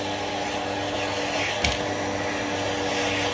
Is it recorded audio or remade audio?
recorded